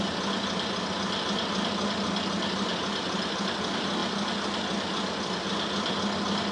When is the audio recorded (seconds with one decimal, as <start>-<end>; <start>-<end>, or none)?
0.0-6.5